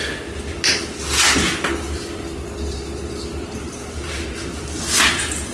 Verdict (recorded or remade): recorded